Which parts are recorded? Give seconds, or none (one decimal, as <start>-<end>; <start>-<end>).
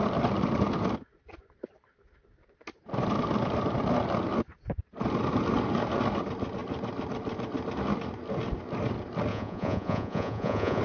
0.0-9.3